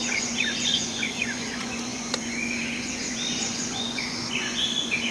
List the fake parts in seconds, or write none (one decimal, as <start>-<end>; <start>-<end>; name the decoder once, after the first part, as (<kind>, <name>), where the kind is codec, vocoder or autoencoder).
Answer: 0.0-5.1 (vocoder, Vocos)